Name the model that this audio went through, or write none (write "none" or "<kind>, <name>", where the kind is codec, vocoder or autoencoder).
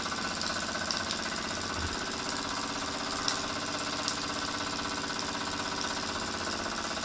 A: none